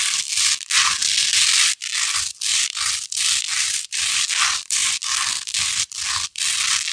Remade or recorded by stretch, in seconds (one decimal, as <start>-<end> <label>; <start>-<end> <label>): 0.0-4.8 remade; 4.8-5.7 recorded; 5.7-6.9 remade